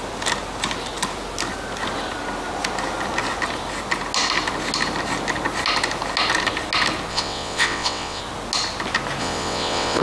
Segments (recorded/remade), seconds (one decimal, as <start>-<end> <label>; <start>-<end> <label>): 0.0-7.1 recorded; 7.1-8.2 remade; 8.2-9.2 recorded; 9.2-10.0 remade